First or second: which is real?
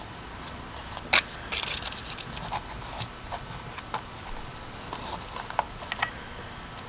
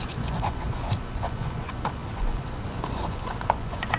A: first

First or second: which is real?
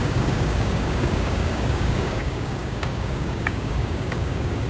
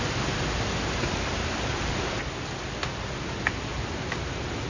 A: second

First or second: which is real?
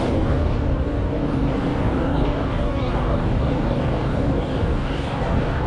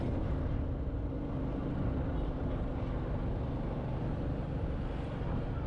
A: second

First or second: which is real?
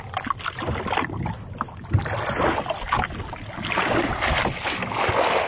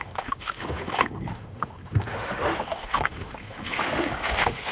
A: first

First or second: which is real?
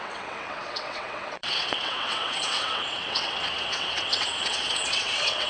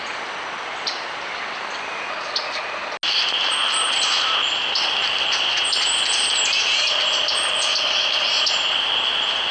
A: second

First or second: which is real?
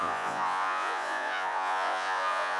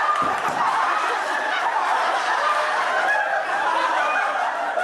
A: second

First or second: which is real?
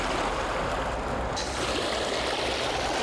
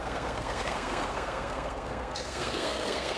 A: first